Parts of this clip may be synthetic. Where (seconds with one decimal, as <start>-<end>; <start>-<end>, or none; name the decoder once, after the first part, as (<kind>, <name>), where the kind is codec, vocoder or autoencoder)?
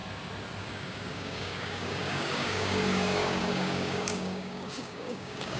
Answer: 0.6-5.6 (codec, DAC)